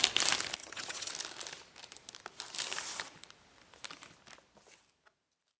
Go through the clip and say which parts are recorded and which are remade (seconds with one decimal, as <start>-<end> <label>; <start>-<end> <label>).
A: 0.0-0.6 recorded; 0.6-1.1 remade; 1.1-5.6 recorded

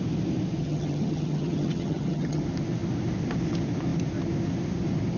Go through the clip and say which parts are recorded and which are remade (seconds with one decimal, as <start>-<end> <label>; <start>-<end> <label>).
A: 0.0-0.6 recorded; 0.6-2.4 remade; 2.4-5.2 recorded

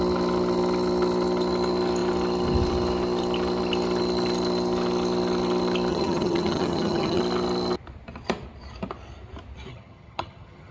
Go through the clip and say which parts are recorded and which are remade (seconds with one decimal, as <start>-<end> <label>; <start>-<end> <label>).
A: 0.0-5.9 recorded; 5.9-7.2 remade; 7.2-9.7 recorded; 9.7-10.7 remade

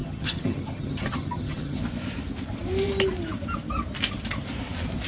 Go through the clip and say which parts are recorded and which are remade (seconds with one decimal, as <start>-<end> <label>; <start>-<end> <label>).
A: 0.0-1.8 remade; 1.8-5.1 recorded

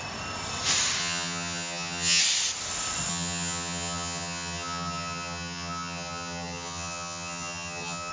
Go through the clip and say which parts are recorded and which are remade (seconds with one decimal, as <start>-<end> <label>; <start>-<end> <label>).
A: 0.0-1.0 recorded; 1.0-2.2 remade; 2.2-3.1 recorded; 3.1-8.1 remade

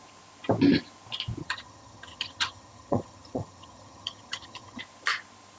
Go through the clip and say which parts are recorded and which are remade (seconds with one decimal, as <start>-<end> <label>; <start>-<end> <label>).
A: 0.0-1.4 recorded; 1.4-4.8 remade; 4.8-5.6 recorded